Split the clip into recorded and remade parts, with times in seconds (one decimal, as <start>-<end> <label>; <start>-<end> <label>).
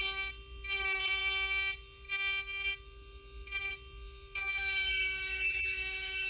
0.0-4.4 recorded; 4.4-6.3 remade